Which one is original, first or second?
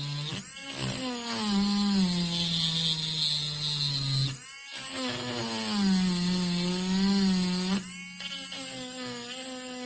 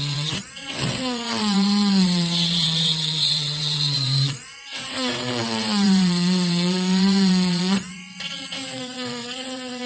first